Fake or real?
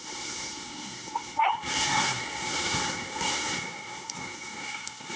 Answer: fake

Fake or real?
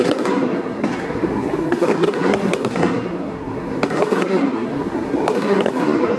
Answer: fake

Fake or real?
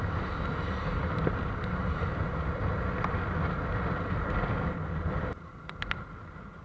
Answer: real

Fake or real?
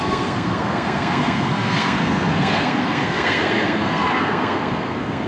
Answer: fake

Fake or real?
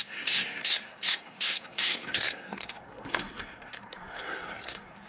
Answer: fake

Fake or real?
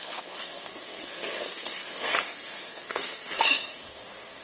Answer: fake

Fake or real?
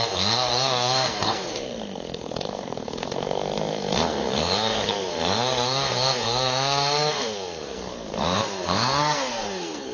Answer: fake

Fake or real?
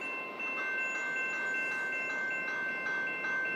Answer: real